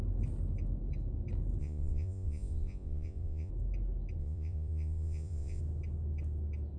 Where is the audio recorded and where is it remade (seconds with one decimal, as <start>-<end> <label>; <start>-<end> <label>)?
0.0-1.6 recorded; 1.6-3.5 remade; 3.5-4.2 recorded; 4.2-5.6 remade; 5.6-6.8 recorded